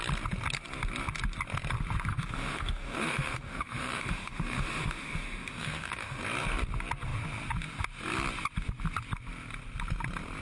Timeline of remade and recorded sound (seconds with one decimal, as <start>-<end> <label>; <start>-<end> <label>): 0.0-2.1 recorded; 2.1-6.2 remade; 6.2-10.4 recorded